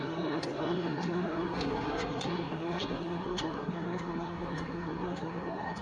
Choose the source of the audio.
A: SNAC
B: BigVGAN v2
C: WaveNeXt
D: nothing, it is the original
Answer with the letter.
A